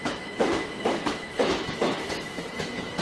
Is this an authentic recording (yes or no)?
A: no